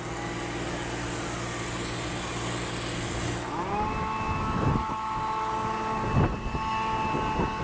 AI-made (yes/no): no